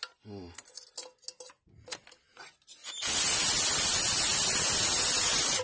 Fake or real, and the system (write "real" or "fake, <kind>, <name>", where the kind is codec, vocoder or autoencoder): real